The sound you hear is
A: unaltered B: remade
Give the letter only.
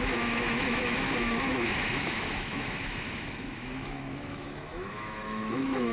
B